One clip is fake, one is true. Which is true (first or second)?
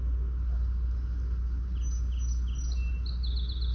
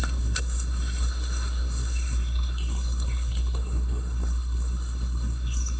first